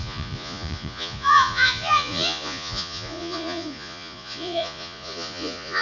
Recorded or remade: remade